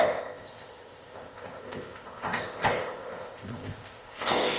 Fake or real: fake